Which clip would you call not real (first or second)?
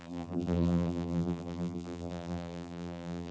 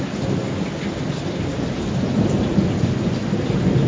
first